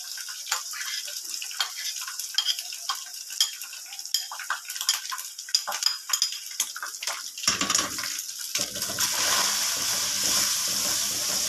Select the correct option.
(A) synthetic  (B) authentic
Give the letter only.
B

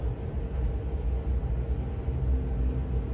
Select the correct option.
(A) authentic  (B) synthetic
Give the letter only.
A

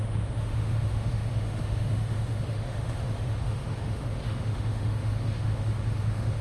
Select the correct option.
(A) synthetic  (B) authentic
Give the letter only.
A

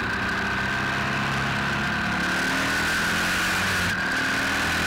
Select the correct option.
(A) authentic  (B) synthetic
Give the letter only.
A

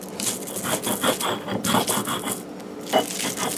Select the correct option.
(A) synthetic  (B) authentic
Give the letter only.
B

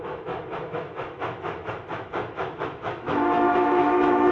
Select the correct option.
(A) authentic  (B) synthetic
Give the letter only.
B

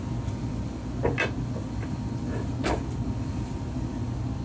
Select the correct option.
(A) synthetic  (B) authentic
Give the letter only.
B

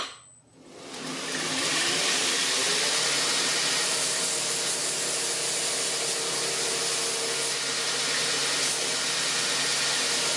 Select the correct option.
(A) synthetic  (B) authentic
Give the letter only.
B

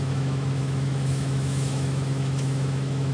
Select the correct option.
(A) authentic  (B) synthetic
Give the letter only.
B